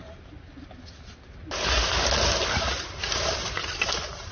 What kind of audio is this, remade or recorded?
recorded